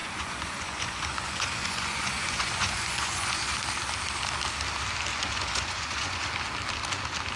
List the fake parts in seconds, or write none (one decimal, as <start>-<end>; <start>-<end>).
0.0-3.5; 5.1-6.3